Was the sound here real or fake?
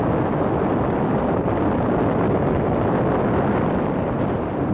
real